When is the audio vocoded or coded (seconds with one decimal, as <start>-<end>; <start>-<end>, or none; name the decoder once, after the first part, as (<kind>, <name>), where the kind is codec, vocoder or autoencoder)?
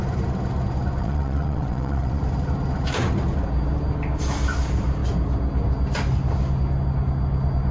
1.0-2.2 (vocoder, WaveNeXt)